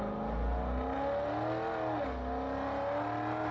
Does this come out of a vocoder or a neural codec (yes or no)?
no